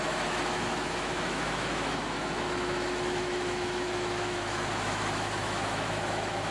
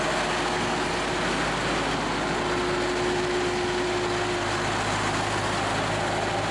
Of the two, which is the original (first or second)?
second